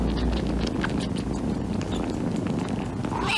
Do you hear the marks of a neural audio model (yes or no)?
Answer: no